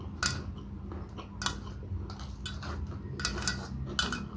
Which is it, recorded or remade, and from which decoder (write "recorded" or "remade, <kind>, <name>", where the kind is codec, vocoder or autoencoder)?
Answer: recorded